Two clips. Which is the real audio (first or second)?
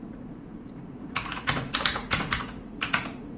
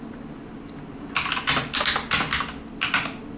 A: second